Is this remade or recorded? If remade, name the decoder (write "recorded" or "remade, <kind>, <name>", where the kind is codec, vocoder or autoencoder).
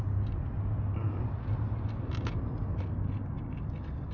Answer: recorded